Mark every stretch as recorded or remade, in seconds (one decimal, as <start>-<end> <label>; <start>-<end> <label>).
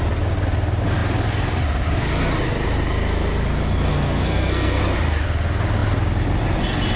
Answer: 0.0-3.9 recorded; 3.9-4.8 remade; 4.8-7.0 recorded